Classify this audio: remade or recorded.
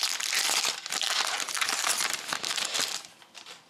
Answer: recorded